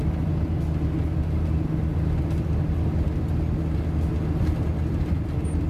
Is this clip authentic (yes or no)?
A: yes